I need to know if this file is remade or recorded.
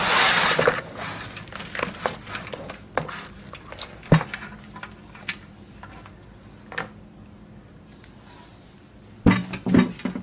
recorded